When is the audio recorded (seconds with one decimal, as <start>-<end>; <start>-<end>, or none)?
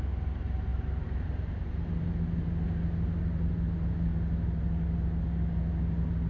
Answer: 0.0-0.7; 1.7-6.3